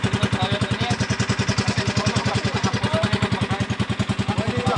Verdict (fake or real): real